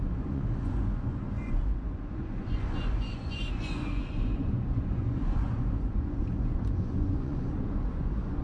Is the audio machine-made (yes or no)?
yes